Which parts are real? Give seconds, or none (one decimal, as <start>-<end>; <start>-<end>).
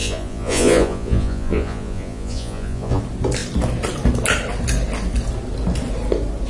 3.0-6.5